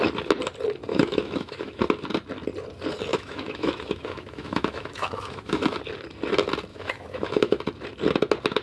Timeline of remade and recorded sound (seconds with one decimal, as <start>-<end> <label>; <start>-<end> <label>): 0.0-0.9 recorded; 0.9-1.8 remade; 1.8-3.1 recorded; 3.1-5.8 remade; 5.8-6.7 recorded; 6.7-7.6 remade; 7.6-8.6 recorded